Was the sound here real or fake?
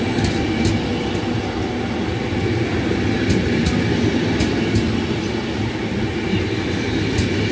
real